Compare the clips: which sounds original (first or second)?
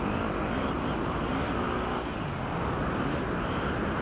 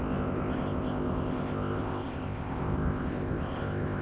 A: first